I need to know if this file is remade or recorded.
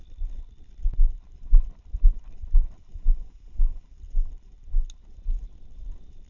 recorded